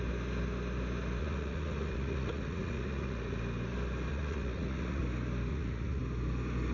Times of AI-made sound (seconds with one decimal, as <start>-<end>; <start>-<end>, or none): 1.2-3.4; 4.1-5.0; 5.5-6.0

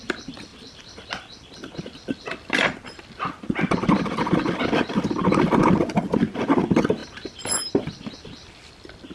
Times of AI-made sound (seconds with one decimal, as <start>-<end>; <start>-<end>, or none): none

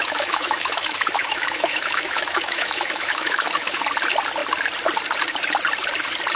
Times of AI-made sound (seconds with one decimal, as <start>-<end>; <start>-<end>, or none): 0.0-3.8

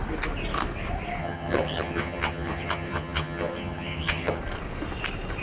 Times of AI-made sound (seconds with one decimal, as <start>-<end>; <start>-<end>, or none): 1.2-4.4

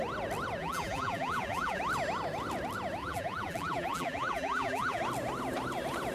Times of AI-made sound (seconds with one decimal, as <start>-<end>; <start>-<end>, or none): 0.6-1.8; 3.0-5.0

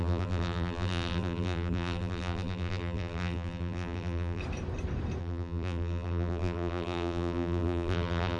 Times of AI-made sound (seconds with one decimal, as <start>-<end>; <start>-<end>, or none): 0.0-4.4; 5.2-8.4

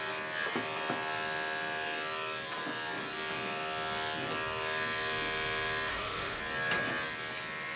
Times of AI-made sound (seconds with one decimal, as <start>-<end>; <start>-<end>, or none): 5.9-6.4